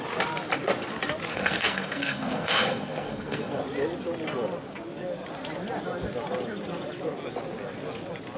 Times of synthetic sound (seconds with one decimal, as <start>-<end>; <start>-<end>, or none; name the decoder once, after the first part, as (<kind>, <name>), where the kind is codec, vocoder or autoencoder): 1.3-3.6 (codec, SNAC)